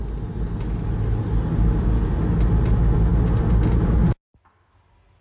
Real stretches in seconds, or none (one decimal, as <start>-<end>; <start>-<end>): 0.0-5.2